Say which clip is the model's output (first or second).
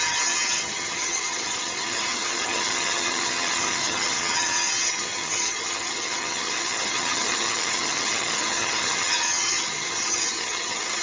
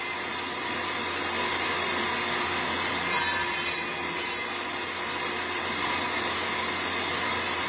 first